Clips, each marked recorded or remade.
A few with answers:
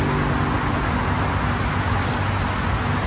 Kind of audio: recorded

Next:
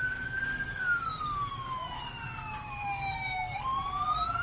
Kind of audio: remade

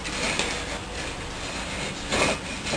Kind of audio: recorded